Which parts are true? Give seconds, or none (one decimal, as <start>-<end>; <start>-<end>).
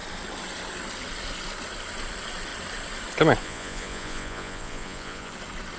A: 0.0-3.4; 5.3-5.8